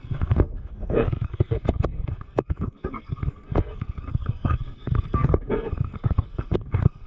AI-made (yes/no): yes